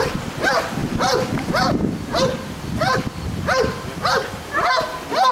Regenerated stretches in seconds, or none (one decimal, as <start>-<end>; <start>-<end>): 0.8-1.8

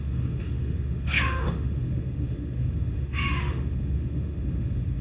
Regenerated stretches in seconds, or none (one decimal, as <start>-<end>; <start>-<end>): 0.0-5.0

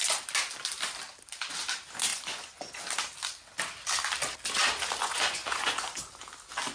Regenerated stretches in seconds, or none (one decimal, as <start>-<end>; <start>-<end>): 2.1-2.8; 5.0-6.0

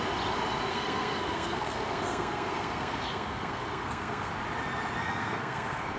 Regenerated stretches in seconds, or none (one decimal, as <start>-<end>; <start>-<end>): 0.7-4.3; 5.0-6.0

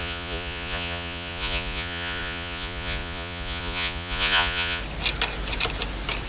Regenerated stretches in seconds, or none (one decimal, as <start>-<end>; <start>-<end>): 0.0-4.8

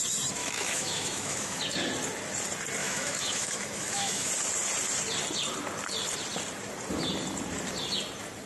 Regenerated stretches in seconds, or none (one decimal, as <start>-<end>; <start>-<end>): 0.4-1.6; 2.8-4.3

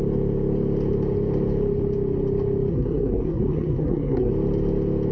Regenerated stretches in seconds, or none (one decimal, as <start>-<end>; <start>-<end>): 2.7-4.3

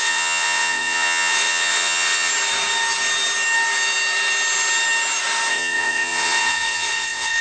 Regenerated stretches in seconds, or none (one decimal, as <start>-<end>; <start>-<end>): 0.0-2.3; 5.5-7.4